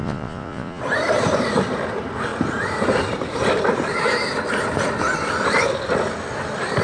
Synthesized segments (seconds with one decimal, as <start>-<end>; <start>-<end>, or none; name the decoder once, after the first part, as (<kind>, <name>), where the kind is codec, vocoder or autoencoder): 0.0-0.8 (vocoder, Vocos)